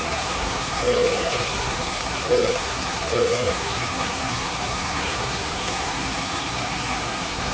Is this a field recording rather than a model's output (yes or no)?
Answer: no